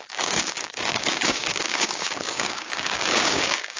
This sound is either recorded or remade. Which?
remade